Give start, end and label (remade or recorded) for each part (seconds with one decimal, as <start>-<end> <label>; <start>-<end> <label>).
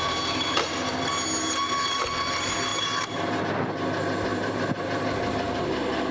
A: 0.0-2.7 recorded; 2.7-3.4 remade; 3.4-4.3 recorded; 4.3-6.1 remade